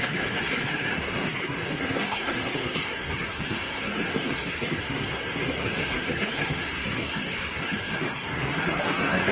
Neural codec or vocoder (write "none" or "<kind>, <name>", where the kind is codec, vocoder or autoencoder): codec, SNAC